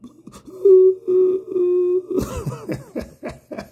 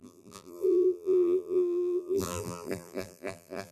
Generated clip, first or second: second